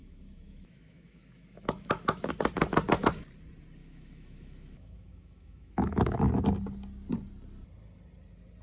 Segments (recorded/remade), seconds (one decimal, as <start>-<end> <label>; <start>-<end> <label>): 0.0-2.3 remade; 2.3-3.8 recorded; 3.8-6.2 remade; 6.2-8.6 recorded

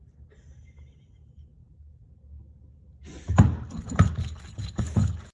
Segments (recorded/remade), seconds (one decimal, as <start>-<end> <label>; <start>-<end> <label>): 0.0-5.3 recorded

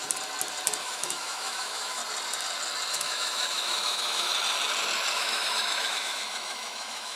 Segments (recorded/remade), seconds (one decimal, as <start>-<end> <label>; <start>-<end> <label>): 0.0-0.8 recorded; 0.8-2.0 remade; 2.0-2.9 recorded; 2.9-4.3 remade; 4.3-5.1 recorded; 5.1-7.2 remade

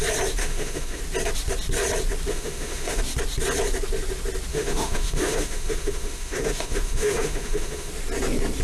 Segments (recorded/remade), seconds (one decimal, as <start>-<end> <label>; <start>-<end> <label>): 0.0-0.4 recorded; 0.4-1.0 remade; 1.0-2.3 recorded; 2.3-3.0 remade; 3.0-4.5 recorded; 4.5-7.9 remade; 7.9-8.6 recorded